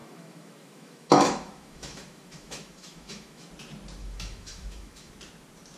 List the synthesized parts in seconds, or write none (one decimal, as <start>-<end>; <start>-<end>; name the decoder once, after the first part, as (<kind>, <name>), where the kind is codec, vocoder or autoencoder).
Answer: 0.0-3.5 (autoencoder, DAC-VAE); 4.0-5.1